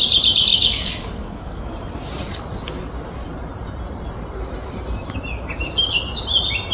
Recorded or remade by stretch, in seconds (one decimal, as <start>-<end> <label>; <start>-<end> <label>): 0.0-0.5 recorded; 0.5-1.7 remade; 1.7-6.7 recorded